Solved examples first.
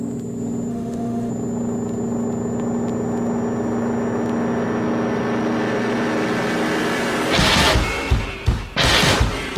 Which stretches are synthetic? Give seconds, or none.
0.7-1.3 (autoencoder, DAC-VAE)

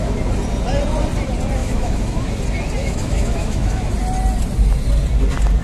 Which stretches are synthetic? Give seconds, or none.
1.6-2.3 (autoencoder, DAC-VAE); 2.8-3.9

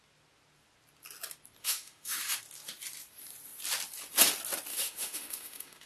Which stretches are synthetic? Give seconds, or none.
1.6-2.4 (autoencoder, DAC-VAE); 4.7-5.9

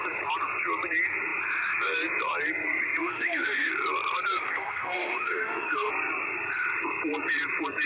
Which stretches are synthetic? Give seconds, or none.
3.0-3.7 (autoencoder, DAC-VAE); 4.3-5.9

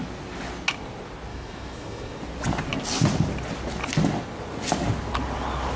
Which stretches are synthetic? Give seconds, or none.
1.3-2.2 (autoencoder, DAC-VAE)

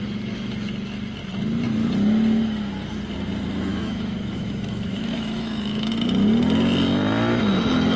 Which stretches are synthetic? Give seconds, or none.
3.7-5.9 (autoencoder, DAC-VAE)

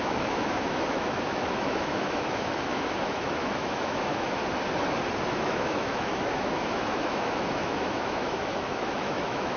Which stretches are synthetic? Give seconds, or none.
0.0-4.4 (autoencoder, DAC-VAE); 5.3-9.6